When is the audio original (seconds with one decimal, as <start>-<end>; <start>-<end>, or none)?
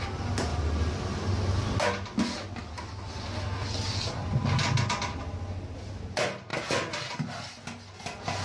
0.0-8.4